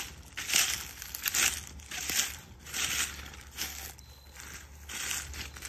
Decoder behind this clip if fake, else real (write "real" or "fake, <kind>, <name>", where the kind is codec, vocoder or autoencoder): real